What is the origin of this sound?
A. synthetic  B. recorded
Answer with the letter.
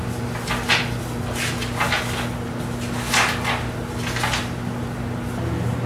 B